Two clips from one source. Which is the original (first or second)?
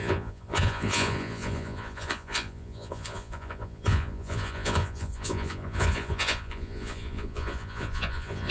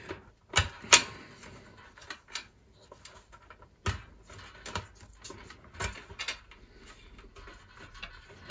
second